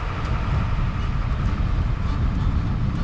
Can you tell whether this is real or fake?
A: real